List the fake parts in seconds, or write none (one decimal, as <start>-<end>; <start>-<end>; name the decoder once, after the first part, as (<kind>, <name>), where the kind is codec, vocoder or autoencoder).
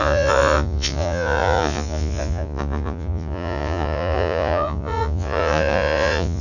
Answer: 0.0-6.4 (vocoder, Vocos)